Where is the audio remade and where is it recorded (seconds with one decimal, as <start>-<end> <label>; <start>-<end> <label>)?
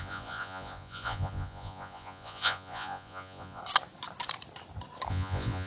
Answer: 0.0-3.6 remade; 3.6-5.1 recorded; 5.1-5.7 remade